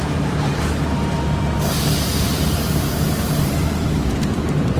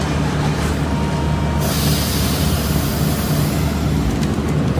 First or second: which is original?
second